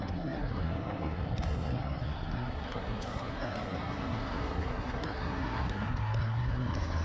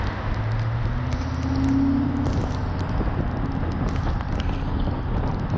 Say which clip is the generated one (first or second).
first